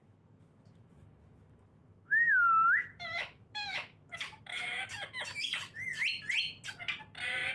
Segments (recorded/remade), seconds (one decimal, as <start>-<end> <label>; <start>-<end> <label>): 0.0-5.9 remade; 5.9-7.5 recorded